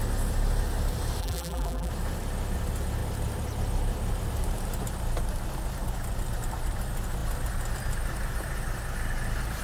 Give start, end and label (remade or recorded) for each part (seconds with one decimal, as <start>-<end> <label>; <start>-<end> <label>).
0.0-1.2 recorded; 1.2-1.9 remade; 1.9-9.6 recorded